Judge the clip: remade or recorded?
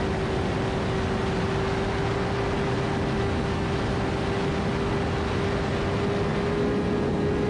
recorded